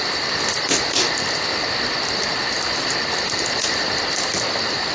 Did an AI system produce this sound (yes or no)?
no